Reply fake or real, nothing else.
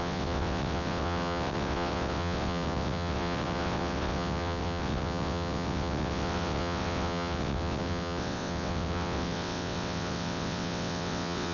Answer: fake